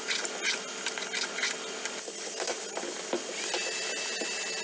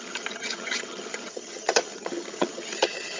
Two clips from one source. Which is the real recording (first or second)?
first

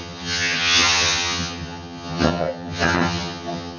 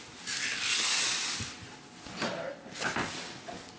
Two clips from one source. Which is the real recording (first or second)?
second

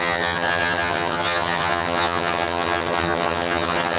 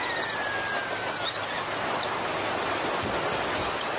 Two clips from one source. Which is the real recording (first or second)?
second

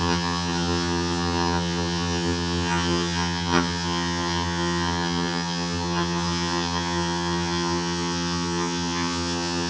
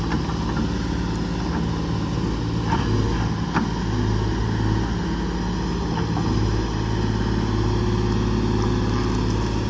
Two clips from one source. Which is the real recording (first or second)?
second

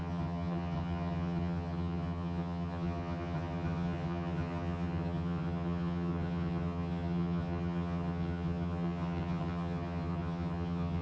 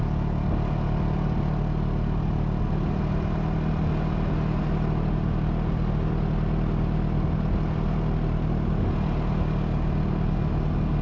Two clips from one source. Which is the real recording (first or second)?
second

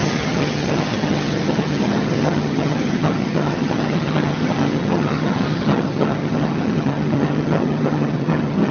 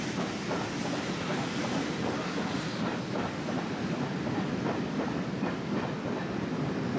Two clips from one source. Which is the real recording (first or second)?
second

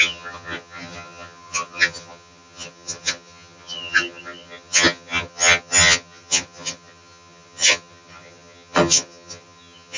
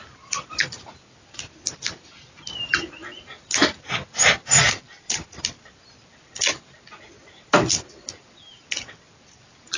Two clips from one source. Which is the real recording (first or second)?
second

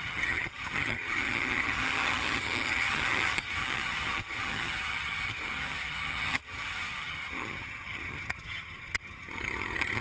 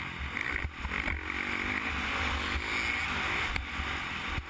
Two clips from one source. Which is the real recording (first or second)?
second